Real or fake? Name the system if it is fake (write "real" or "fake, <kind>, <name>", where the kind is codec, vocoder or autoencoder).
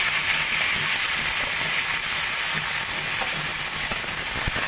real